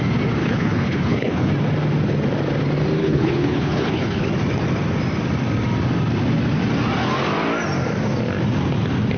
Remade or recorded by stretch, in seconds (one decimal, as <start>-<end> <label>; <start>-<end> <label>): 0.0-0.4 recorded; 0.4-1.5 remade; 1.5-3.0 recorded; 3.0-4.3 remade; 4.3-9.2 recorded